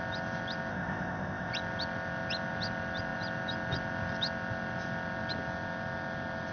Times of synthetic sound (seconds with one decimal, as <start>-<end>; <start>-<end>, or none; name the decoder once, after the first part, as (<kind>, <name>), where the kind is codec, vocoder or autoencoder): 0.7-1.5 (codec, ZipCodec)